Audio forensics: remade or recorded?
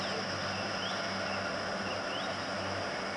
recorded